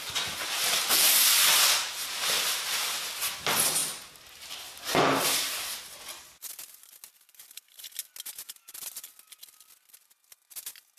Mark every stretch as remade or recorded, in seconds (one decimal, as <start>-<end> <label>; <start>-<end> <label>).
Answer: 0.0-11.0 recorded